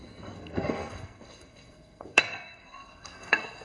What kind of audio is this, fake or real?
fake